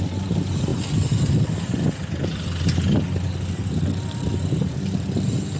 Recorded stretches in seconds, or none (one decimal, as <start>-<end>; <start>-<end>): 0.0-5.6